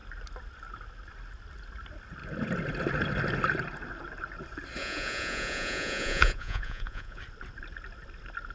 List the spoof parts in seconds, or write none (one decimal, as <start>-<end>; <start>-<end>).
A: 4.8-7.2